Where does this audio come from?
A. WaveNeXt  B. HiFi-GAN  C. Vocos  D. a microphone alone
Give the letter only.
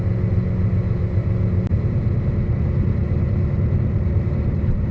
D